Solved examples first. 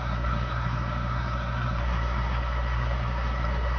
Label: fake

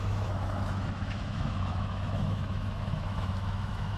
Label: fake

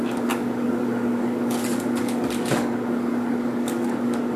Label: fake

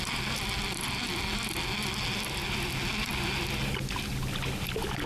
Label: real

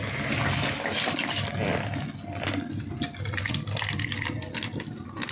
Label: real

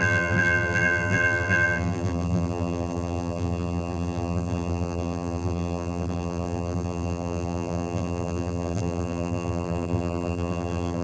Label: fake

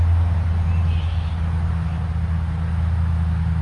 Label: real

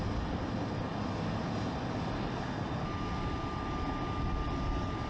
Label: real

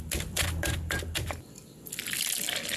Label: real